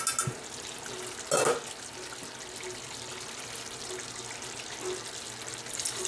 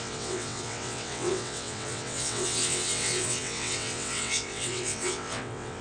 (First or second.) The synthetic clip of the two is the second